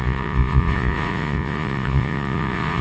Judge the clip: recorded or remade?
remade